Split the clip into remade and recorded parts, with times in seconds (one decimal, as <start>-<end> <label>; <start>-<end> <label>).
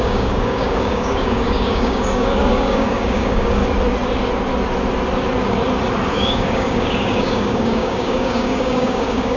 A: 0.0-3.6 remade; 3.6-6.1 recorded; 6.1-9.4 remade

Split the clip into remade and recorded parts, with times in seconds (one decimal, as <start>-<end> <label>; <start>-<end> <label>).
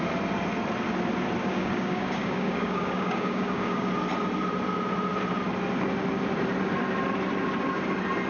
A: 0.0-1.4 recorded; 1.4-3.9 remade; 3.9-8.3 recorded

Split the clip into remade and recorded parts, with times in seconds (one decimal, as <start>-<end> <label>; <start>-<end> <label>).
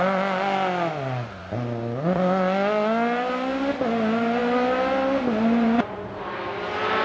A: 0.0-7.0 recorded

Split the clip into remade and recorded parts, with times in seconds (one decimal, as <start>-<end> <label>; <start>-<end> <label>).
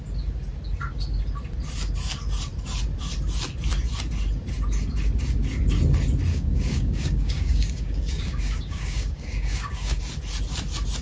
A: 0.0-6.3 recorded; 6.3-10.0 remade; 10.0-11.0 recorded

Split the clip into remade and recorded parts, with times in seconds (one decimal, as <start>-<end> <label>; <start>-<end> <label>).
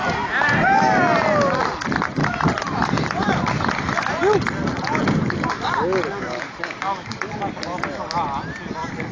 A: 0.0-6.1 recorded; 6.1-7.4 remade; 7.4-9.1 recorded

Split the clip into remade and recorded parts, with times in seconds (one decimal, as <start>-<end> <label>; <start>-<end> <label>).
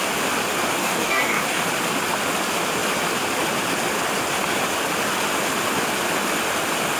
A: 0.0-0.8 recorded; 0.8-1.6 remade; 1.6-7.0 recorded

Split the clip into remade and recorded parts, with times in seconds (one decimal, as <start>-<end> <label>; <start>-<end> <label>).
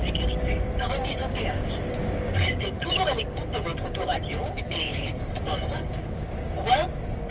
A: 0.0-7.3 remade